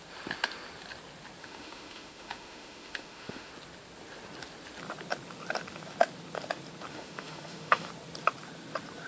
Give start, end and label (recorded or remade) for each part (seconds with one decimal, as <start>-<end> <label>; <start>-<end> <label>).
0.0-1.4 recorded; 1.4-3.5 remade; 3.5-6.9 recorded; 6.9-7.9 remade; 7.9-9.1 recorded